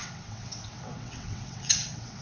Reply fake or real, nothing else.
fake